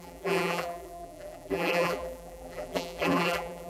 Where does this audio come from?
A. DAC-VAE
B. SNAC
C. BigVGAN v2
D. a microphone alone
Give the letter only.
C